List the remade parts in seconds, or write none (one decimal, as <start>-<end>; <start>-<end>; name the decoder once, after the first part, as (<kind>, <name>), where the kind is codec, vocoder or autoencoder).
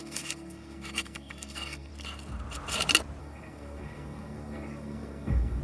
0.0-1.9 (codec, SNAC); 3.2-5.6